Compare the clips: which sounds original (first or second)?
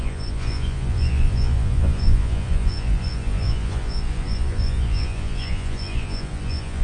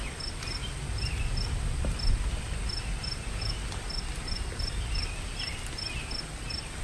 second